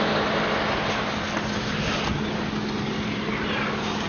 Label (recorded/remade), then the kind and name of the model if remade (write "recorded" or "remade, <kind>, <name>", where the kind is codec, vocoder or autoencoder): recorded